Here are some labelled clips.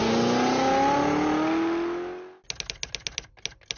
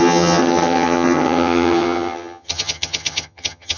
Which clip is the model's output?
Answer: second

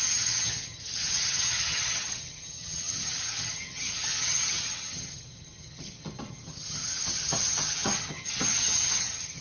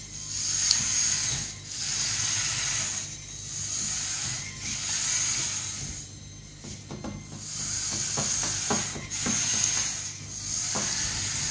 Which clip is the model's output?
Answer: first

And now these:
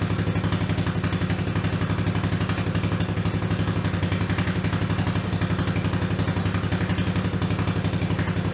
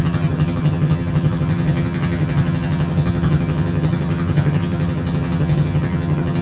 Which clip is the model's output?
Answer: second